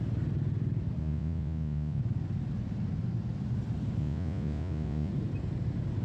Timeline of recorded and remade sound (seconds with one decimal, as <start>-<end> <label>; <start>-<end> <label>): 0.0-1.0 recorded; 1.0-2.0 remade; 2.0-4.0 recorded; 4.0-5.1 remade; 5.1-6.0 recorded